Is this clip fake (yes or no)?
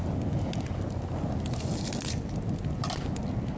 no